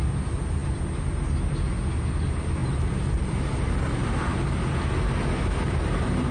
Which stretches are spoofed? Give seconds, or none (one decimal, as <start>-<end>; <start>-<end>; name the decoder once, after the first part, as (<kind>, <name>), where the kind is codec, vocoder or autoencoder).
2.6-3.9 (vocoder, BigVGAN v2)